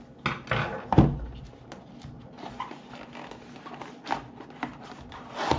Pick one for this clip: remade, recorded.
recorded